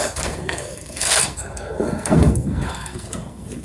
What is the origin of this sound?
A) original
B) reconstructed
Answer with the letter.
B